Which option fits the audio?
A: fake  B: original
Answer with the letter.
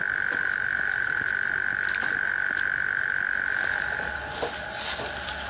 B